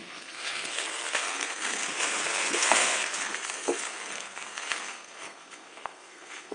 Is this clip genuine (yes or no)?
no